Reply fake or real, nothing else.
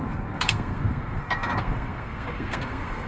fake